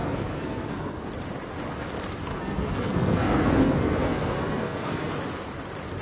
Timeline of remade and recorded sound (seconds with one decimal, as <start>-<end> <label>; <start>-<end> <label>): 0.0-1.1 remade; 1.1-2.3 recorded; 2.3-5.1 remade; 5.1-6.0 recorded